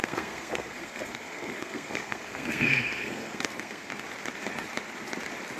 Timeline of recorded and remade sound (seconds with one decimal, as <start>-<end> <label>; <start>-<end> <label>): 0.0-3.9 remade; 3.9-5.6 recorded